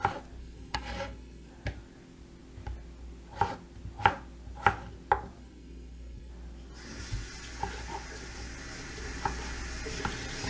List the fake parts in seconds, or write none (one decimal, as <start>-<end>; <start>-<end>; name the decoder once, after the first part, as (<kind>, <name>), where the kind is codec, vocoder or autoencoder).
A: 0.4-1.5 (codec, SNAC); 5.4-6.3